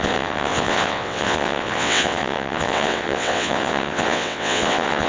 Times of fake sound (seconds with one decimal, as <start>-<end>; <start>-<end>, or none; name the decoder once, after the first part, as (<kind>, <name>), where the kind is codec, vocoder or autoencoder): 0.0-5.1 (vocoder, WaveNeXt)